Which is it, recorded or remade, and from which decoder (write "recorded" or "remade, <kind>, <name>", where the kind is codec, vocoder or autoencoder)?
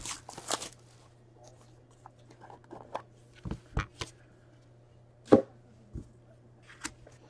recorded